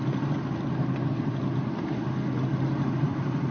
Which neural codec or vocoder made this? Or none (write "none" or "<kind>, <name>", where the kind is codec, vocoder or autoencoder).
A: none